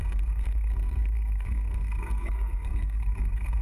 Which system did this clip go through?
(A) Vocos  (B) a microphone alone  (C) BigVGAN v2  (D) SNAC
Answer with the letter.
D